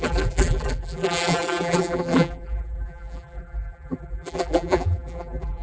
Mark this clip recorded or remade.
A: remade